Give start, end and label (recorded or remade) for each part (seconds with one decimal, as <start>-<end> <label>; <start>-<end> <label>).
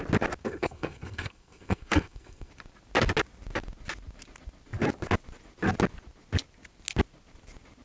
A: 0.0-0.4 recorded; 0.4-2.5 remade; 2.5-7.8 recorded